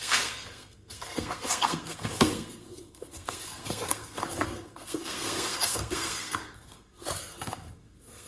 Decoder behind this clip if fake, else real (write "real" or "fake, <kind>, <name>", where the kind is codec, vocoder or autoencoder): fake, codec, SNAC